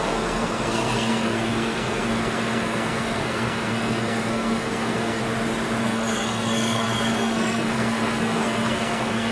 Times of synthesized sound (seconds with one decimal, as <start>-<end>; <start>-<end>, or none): 0.0-5.2; 5.8-9.3